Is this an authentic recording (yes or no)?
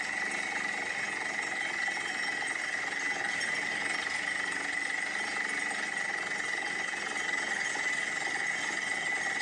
yes